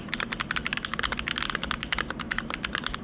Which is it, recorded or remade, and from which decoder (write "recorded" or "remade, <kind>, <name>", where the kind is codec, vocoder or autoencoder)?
recorded